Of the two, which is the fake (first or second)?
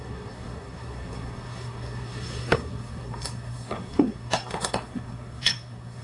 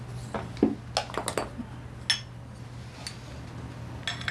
first